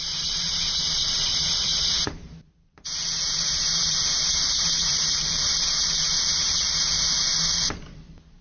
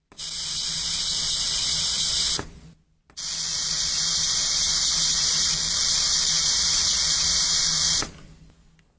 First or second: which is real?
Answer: second